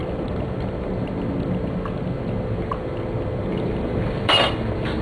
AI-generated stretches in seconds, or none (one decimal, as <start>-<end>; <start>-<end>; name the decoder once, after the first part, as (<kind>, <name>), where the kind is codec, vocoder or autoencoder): 3.5-4.3 (vocoder, BigVGAN v2)